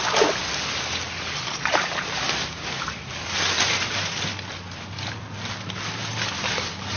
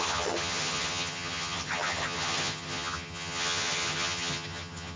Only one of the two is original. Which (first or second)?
first